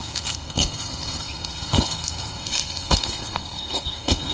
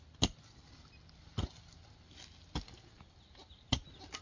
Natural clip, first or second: second